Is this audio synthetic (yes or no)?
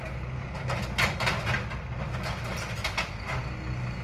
no